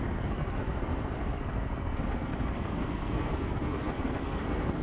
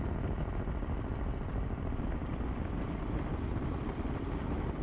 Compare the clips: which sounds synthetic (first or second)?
first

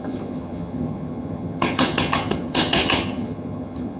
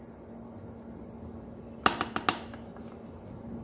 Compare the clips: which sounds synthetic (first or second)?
first